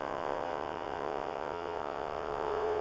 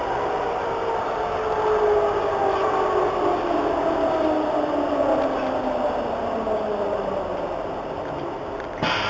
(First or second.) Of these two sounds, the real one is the second